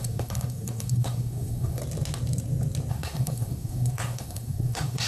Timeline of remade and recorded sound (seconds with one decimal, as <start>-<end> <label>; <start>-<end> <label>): 0.0-1.8 remade; 1.8-2.9 recorded; 2.9-5.1 remade